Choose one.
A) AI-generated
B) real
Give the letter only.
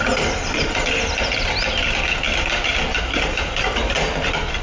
B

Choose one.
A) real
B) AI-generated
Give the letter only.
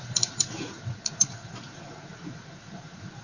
B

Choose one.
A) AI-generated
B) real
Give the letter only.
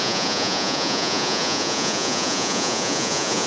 A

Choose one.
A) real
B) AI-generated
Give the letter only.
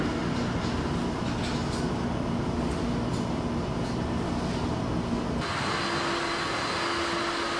A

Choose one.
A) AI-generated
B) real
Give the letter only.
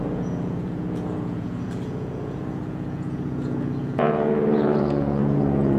A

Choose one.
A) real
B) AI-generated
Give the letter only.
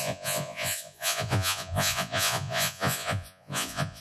B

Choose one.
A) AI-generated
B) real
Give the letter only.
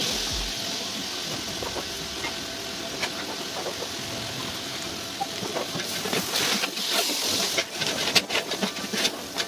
B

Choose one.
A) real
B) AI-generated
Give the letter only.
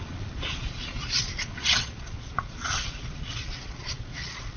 B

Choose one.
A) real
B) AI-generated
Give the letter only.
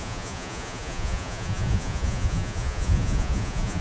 B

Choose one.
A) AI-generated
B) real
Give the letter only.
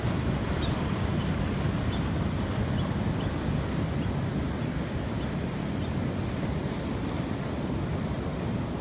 B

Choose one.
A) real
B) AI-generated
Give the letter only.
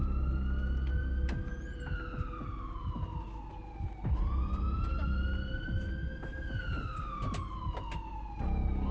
A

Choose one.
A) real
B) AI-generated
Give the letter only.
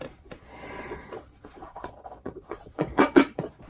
B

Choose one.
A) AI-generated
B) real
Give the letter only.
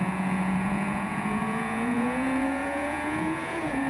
A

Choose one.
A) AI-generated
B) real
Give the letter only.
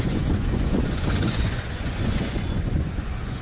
A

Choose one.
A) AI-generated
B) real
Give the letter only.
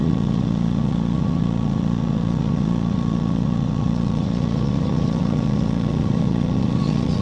A